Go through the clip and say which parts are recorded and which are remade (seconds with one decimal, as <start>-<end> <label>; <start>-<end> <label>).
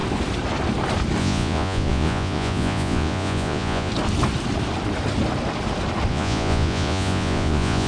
0.0-1.2 recorded; 1.2-3.9 remade; 3.9-6.1 recorded; 6.1-7.9 remade